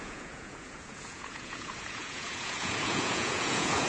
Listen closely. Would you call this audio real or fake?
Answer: fake